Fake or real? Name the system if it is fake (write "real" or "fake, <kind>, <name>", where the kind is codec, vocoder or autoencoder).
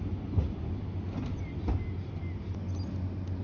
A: real